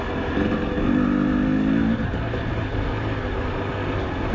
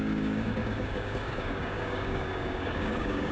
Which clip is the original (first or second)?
first